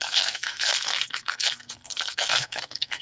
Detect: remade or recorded remade